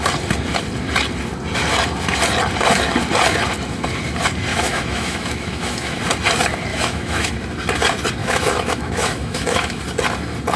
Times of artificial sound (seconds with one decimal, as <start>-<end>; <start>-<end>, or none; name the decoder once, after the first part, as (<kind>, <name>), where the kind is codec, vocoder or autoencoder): 4.5-6.0 (autoencoder, DAC-VAE); 6.7-7.3; 8.2-9.8